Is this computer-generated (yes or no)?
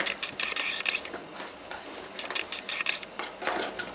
no